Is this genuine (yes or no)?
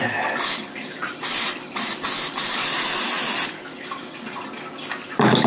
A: yes